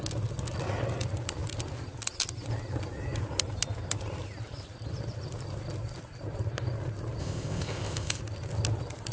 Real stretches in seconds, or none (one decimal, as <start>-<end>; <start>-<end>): 0.0-7.2; 8.2-9.1